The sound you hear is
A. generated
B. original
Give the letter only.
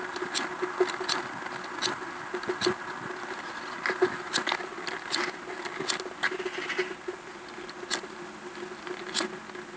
B